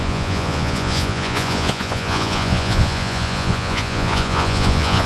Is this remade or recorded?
remade